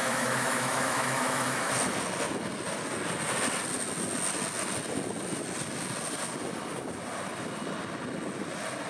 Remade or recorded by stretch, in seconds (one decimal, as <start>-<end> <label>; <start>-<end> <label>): 0.0-1.7 remade; 1.7-8.9 recorded